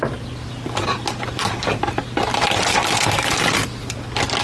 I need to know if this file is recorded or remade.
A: recorded